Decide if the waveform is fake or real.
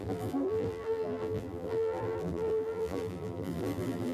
fake